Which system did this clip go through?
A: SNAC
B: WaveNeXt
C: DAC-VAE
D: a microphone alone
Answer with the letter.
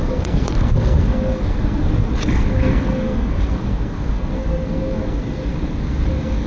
A